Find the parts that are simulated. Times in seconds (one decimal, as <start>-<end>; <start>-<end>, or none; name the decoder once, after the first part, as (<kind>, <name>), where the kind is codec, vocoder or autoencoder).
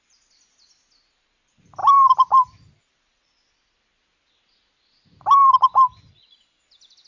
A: none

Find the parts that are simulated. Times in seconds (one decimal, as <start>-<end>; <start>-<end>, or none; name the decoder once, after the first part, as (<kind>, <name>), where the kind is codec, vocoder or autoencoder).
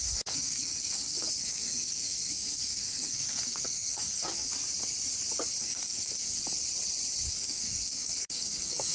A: 0.0-4.5 (codec, SNAC); 5.6-6.4; 7.3-8.9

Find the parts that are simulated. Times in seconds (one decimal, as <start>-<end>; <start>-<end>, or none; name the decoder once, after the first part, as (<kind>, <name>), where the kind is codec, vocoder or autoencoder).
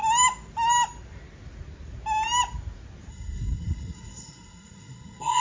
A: 3.1-5.4 (codec, SNAC)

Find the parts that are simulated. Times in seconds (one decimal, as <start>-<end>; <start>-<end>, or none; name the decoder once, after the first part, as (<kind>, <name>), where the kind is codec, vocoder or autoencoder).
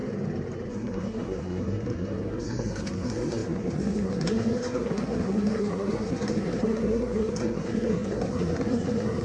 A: 0.7-9.2 (codec, SNAC)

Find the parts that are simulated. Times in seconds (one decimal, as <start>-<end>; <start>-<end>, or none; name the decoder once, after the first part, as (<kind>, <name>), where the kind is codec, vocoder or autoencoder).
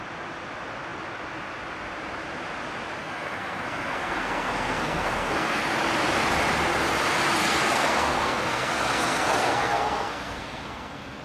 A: 3.0-5.6 (codec, SNAC); 7.4-11.2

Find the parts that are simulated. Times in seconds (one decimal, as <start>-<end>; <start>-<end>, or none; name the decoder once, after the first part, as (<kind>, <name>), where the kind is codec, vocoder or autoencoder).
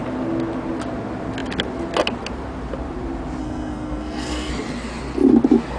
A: 3.4-4.5 (codec, SNAC)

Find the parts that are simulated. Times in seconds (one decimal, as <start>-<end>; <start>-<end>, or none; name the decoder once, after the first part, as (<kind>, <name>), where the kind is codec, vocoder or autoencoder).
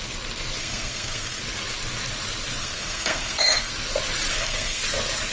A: 0.6-1.4 (codec, SNAC); 2.6-3.7; 4.3-4.8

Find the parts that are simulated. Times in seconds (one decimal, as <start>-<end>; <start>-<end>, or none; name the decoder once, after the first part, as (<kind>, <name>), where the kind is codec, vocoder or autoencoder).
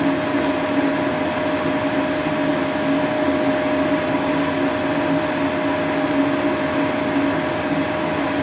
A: none